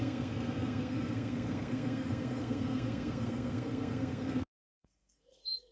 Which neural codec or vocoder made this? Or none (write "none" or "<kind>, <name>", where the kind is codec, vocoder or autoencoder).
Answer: codec, SNAC